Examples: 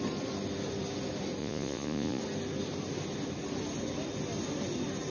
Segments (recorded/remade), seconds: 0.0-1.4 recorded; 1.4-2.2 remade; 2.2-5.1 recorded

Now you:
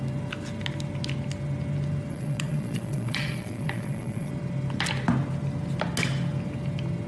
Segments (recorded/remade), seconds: 0.0-2.1 recorded; 2.1-4.3 remade; 4.3-7.1 recorded

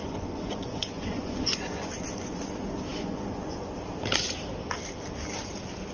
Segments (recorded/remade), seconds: 0.0-2.3 remade; 2.3-2.9 recorded; 2.9-3.7 remade; 3.7-5.9 recorded

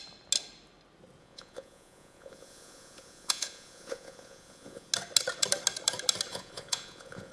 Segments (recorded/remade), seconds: 0.0-1.2 recorded; 1.2-4.9 remade; 4.9-6.3 recorded; 6.3-7.3 remade